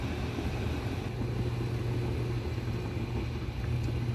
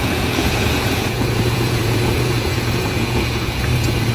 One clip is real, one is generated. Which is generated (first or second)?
second